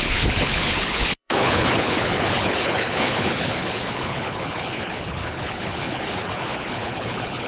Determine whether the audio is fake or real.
fake